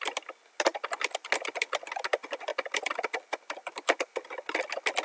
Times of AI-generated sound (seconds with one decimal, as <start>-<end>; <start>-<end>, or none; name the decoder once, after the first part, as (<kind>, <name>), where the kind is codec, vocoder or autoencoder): none